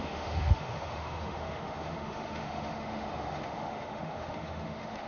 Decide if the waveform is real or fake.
fake